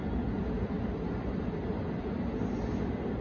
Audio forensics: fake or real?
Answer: real